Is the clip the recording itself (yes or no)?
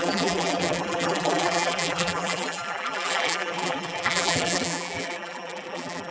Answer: no